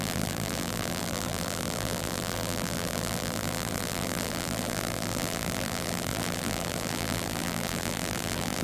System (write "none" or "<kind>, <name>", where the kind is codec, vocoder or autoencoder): vocoder, BigVGAN v2